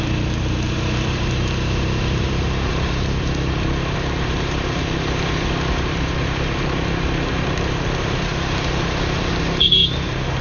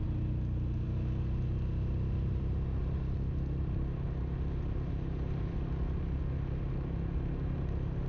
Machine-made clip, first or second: first